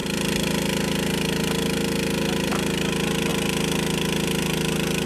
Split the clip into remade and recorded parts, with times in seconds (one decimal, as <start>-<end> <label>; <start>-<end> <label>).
0.0-5.1 recorded

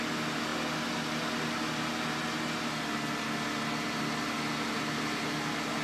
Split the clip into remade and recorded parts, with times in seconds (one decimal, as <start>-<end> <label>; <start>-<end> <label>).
0.0-5.8 recorded

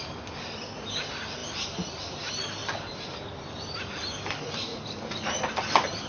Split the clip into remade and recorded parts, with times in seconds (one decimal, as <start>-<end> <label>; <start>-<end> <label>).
0.0-4.7 recorded; 4.7-5.4 remade; 5.4-6.1 recorded

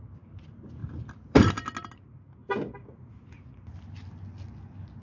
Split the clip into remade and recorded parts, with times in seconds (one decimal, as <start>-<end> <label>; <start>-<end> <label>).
0.0-0.8 recorded; 0.8-1.5 remade; 1.5-5.0 recorded

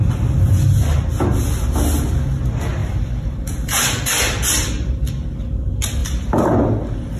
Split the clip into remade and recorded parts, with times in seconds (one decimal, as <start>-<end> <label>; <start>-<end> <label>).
0.0-2.8 recorded; 2.8-5.1 remade; 5.1-6.0 recorded; 6.0-6.6 remade; 6.6-7.2 recorded

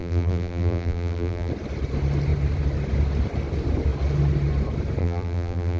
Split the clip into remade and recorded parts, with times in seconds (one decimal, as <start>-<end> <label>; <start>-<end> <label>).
0.0-1.5 remade; 1.5-5.0 recorded; 5.0-5.8 remade

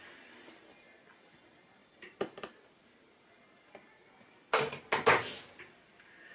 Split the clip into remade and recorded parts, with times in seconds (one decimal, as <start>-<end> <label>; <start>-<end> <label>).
0.0-6.3 recorded